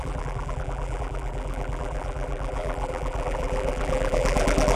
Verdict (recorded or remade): remade